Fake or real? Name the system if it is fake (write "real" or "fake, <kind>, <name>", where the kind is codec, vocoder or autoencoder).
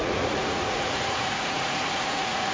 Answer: fake, vocoder, Vocos